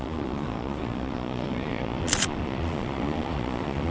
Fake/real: fake